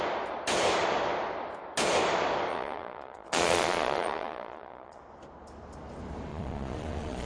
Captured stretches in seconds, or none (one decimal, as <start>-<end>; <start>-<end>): 0.0-2.5; 5.0-6.3